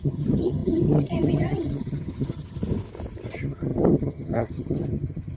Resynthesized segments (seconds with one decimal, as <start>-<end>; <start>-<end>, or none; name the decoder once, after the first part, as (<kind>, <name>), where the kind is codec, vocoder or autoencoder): 0.0-2.6 (vocoder, HiFi-GAN); 3.3-5.4